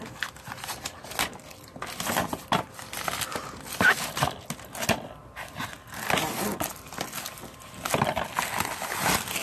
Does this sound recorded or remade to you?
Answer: recorded